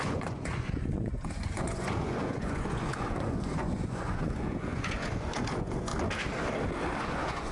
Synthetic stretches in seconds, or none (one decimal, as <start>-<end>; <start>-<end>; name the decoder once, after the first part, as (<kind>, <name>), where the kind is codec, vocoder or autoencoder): 0.0-5.9 (vocoder, Vocos); 7.0-7.5